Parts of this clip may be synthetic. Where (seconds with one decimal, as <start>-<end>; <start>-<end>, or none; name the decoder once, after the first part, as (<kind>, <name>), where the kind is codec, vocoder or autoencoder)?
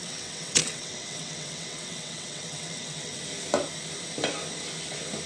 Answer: 0.0-3.2 (vocoder, WaveNeXt)